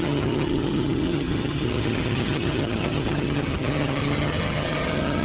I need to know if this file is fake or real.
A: fake